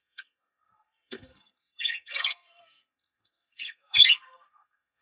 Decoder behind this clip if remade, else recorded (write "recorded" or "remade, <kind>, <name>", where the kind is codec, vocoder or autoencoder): remade, codec, SNAC